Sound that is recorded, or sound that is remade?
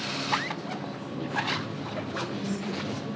recorded